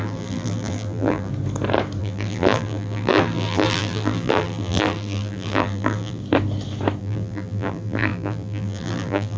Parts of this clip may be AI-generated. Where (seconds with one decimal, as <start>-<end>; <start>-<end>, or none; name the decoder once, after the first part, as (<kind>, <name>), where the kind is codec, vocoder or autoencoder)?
0.0-1.3 (vocoder, BigVGAN v2); 2.0-6.2; 7.0-9.4